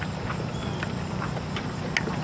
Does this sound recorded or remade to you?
recorded